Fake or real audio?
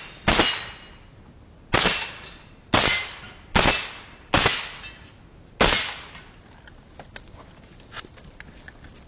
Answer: real